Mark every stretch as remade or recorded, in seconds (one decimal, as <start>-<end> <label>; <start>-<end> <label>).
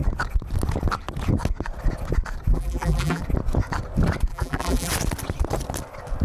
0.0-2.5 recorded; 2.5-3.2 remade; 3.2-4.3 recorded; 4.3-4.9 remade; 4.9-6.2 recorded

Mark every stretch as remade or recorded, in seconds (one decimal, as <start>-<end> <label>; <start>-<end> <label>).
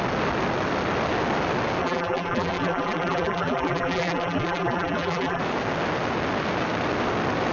0.0-1.8 recorded; 1.8-5.4 remade; 5.4-7.5 recorded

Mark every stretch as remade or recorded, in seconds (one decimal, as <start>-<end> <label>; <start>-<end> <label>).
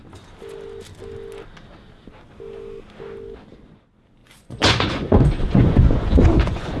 0.0-4.2 recorded; 4.2-6.8 remade